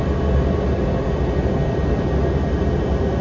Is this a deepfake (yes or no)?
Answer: no